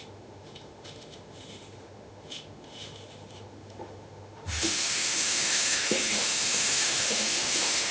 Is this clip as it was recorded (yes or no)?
no